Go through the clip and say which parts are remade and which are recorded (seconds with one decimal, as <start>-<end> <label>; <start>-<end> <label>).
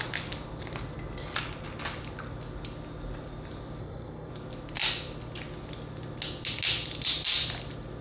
0.0-3.8 recorded; 3.8-4.3 remade; 4.3-8.0 recorded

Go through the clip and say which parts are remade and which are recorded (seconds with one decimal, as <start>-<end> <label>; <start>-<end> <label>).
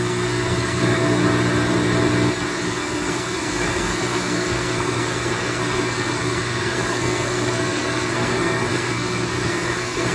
0.0-1.2 remade; 1.2-2.7 recorded; 2.7-10.1 remade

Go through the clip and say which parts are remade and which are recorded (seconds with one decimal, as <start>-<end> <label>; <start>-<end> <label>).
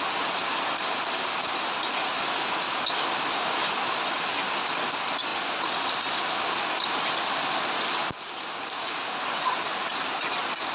0.0-10.7 recorded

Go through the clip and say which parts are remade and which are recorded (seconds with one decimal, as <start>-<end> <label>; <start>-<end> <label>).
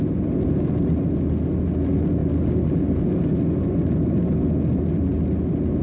0.0-5.8 recorded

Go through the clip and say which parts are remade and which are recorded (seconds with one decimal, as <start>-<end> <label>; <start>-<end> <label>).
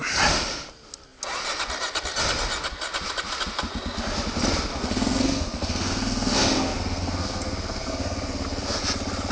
0.0-4.7 recorded; 4.7-8.8 remade; 8.8-9.3 recorded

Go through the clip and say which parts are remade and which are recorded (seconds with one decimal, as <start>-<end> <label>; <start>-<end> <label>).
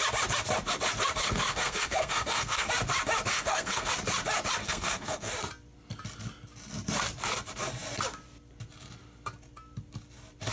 0.0-1.2 recorded; 1.2-2.7 remade; 2.7-3.3 recorded; 3.3-3.9 remade; 3.9-4.6 recorded; 4.6-5.3 remade; 5.3-10.5 recorded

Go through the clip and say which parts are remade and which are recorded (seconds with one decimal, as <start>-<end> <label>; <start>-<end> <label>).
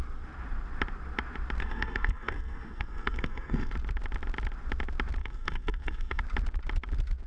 0.0-1.6 recorded; 1.6-3.7 remade; 3.7-5.2 recorded; 5.2-6.2 remade; 6.2-7.3 recorded